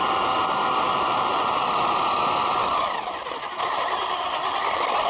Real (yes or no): yes